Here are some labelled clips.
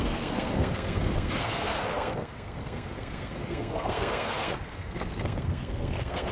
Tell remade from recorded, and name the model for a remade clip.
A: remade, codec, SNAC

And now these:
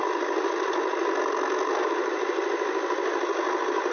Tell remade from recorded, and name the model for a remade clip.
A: recorded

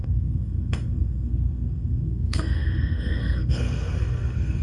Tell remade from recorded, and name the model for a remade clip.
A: remade, codec, SNAC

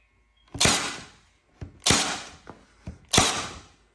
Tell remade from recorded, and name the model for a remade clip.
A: recorded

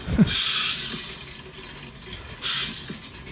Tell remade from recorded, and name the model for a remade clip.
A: recorded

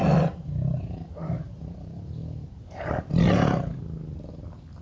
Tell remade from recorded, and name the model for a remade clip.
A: recorded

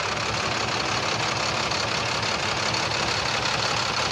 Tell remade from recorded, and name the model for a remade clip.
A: recorded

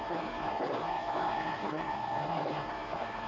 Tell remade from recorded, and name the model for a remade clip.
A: remade, codec, SNAC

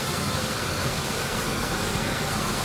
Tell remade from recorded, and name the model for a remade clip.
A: remade, codec, SNAC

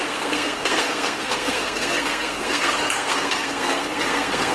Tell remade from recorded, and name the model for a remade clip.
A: remade, codec, SNAC